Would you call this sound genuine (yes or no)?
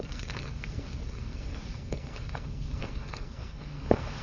no